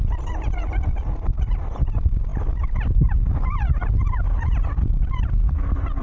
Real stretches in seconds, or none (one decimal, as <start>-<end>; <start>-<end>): none